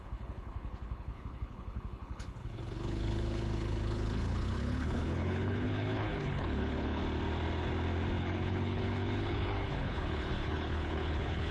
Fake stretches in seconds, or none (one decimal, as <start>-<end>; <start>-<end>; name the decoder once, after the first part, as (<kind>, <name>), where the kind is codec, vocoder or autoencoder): 0.0-7.0 (codec, HILCodec); 8.2-11.5